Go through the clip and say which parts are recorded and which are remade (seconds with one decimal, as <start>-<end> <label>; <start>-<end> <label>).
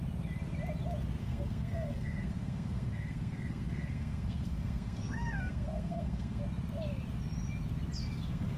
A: 0.0-1.2 recorded; 1.2-6.4 remade; 6.4-8.0 recorded; 8.0-8.6 remade